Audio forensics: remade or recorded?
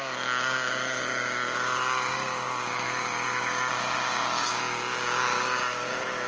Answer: remade